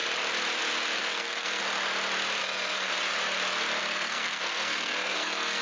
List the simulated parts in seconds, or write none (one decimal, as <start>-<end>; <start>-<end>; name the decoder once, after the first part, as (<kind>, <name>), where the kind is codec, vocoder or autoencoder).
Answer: 1.0-1.6 (codec, SNAC); 2.4-2.9; 3.8-5.6